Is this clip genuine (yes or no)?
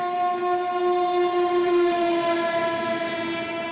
yes